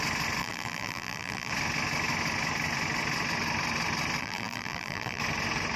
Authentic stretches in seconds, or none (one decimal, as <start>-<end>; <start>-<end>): 0.0-0.4; 1.5-4.2; 5.2-5.8